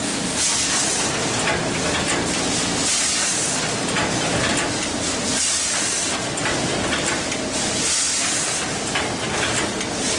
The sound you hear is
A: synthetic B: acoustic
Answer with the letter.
B